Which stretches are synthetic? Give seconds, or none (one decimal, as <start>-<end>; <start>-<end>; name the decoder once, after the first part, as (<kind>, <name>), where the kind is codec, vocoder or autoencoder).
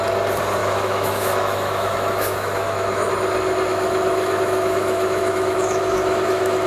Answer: 0.6-3.1 (autoencoder, DAC-VAE); 3.7-6.7